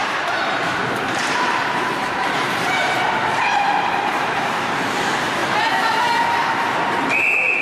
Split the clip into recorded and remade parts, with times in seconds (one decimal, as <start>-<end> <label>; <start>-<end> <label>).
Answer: 0.0-4.6 remade; 4.6-7.6 recorded